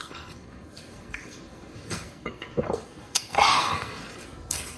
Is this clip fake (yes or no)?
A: yes